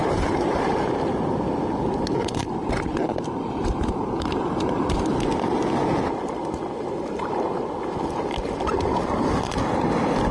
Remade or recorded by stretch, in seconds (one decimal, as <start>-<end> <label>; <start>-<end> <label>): 0.0-0.9 remade; 0.9-2.6 recorded; 2.6-5.1 remade; 5.1-10.3 recorded